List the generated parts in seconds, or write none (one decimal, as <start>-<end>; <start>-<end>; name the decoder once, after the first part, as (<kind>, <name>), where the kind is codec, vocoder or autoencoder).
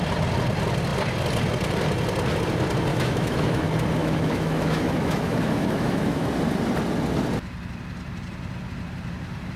2.9-3.6 (autoencoder, DAC-VAE); 4.0-6.3